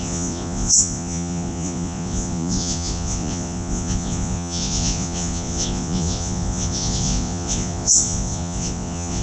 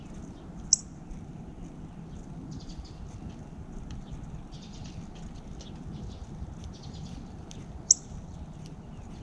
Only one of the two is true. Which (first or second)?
second